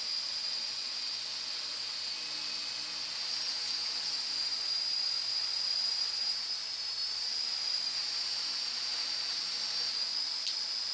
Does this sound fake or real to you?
real